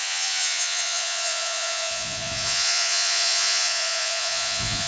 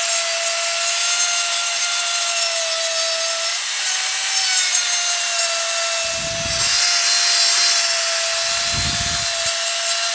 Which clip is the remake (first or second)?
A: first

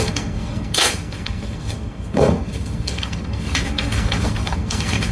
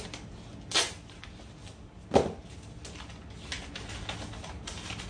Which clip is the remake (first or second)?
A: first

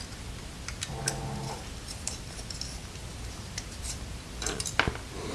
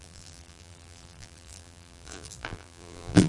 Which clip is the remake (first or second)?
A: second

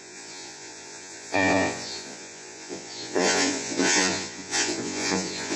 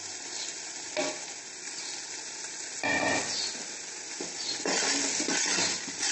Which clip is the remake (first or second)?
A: first